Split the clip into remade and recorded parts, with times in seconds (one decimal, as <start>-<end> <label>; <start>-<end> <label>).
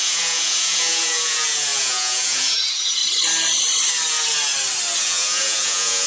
0.0-3.0 remade; 3.0-5.0 recorded; 5.0-6.1 remade